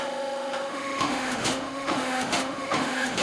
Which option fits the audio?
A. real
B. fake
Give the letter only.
B